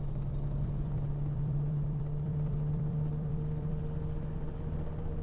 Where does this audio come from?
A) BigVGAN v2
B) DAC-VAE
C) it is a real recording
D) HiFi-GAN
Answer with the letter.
A